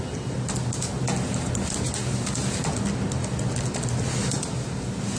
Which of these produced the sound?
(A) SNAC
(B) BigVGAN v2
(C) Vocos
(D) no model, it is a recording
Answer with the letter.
D